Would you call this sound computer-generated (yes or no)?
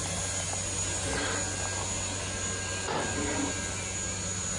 no